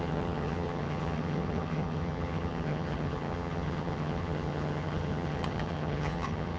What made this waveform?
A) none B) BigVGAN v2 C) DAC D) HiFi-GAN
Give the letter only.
D